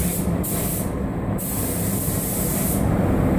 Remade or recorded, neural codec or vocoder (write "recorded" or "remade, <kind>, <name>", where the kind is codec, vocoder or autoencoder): recorded